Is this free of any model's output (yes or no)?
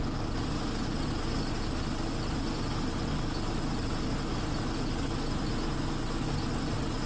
yes